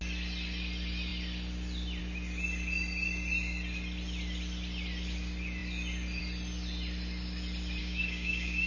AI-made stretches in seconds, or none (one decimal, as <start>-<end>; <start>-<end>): 7.8-8.7